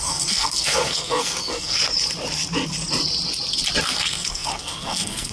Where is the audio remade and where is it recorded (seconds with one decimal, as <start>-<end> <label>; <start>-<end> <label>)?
0.0-1.8 remade; 1.8-3.8 recorded; 3.8-5.3 remade